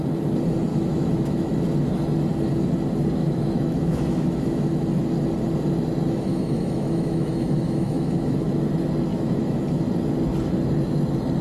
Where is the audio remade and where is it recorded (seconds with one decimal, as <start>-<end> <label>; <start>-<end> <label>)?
0.0-0.7 recorded; 0.7-1.6 remade; 1.6-3.2 recorded; 3.2-4.8 remade; 4.8-6.3 recorded; 6.3-8.5 remade; 8.5-9.1 recorded; 9.1-9.6 remade; 9.6-11.4 recorded